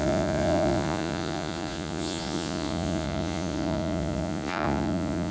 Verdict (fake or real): fake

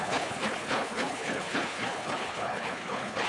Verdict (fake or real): fake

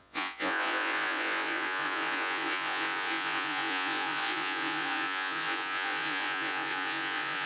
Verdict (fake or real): fake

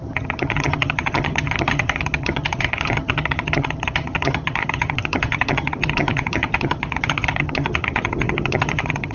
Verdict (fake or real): fake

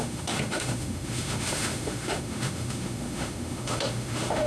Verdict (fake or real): fake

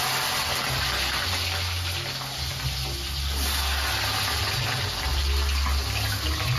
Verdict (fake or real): real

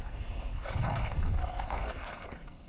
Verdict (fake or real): fake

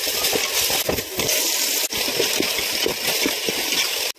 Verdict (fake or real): real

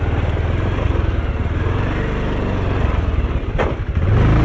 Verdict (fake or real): real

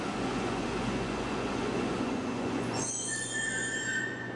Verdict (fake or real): fake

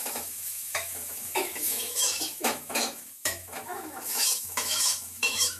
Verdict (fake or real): fake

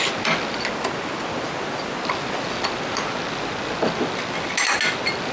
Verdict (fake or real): real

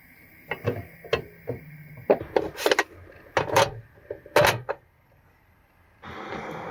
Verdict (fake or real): real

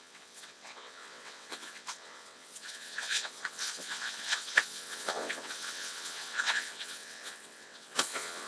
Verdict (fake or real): fake